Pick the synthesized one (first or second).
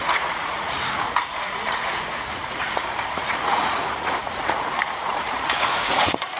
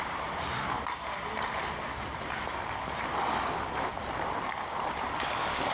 first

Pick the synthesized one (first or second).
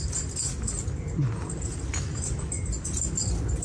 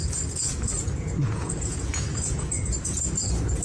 second